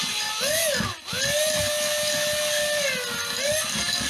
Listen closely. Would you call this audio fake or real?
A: real